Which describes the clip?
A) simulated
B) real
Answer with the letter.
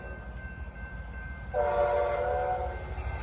B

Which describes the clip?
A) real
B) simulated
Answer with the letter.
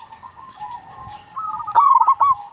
B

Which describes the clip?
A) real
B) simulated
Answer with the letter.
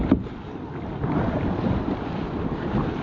A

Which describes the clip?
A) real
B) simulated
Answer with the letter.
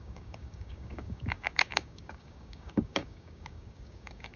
B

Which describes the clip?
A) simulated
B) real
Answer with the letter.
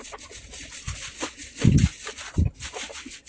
B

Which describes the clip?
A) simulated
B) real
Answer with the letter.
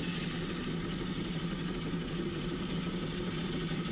B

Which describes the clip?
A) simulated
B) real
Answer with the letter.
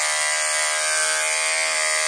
B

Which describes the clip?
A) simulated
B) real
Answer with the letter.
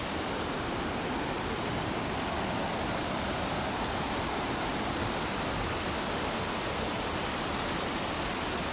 B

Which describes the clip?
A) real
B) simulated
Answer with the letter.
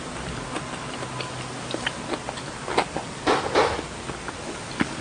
A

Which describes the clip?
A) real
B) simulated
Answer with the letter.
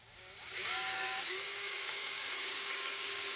B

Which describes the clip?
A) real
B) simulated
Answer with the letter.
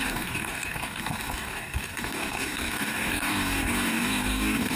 B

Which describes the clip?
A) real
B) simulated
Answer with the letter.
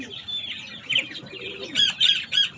A